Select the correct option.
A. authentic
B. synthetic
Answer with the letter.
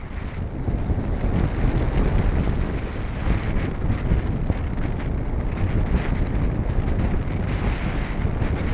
A